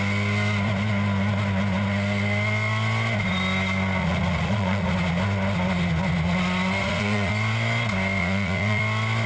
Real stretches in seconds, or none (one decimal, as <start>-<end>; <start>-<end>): 0.0-4.0; 4.9-6.8; 7.3-8.2; 8.8-9.3